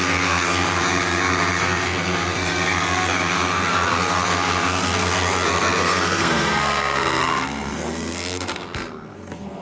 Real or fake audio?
fake